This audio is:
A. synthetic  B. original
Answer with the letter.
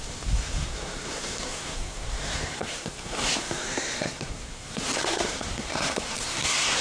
A